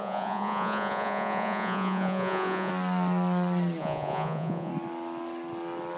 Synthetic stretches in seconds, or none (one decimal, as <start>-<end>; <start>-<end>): 0.0-2.7; 3.8-4.7

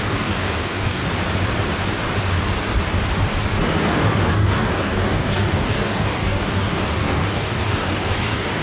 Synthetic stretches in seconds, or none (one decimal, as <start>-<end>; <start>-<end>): 0.0-1.0; 3.9-8.6